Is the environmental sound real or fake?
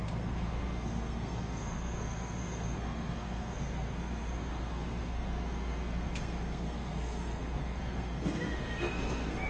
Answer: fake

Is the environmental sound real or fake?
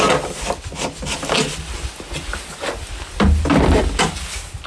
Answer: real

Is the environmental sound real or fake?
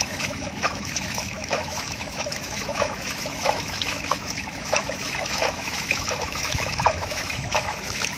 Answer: fake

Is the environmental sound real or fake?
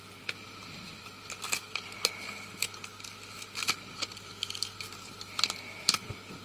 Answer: real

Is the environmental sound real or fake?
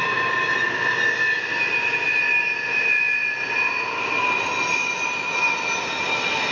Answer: real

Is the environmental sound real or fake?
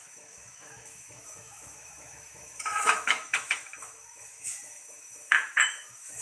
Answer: fake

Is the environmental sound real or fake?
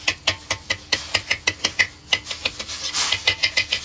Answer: real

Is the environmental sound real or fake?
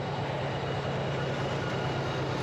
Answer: real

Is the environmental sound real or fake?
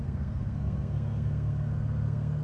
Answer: fake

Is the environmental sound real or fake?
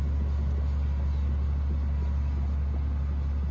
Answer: real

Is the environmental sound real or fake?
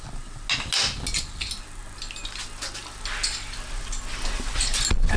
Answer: real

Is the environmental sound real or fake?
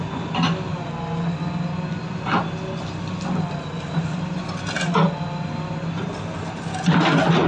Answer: real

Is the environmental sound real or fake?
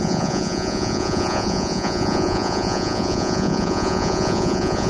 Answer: fake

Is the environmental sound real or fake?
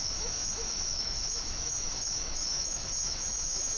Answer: fake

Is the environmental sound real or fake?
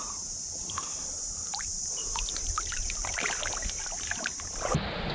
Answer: fake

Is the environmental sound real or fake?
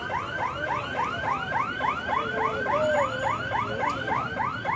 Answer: real